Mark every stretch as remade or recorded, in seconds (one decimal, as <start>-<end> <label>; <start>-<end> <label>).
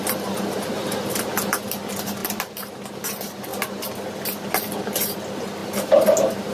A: 0.0-0.8 recorded; 0.8-1.3 remade; 1.3-2.2 recorded; 2.2-2.7 remade; 2.7-6.5 recorded